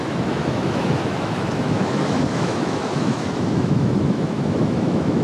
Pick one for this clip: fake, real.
fake